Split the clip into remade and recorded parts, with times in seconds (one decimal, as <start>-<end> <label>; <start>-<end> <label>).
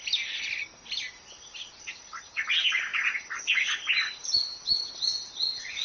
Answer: 0.0-5.8 recorded